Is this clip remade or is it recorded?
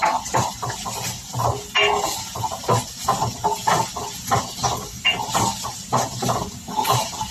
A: recorded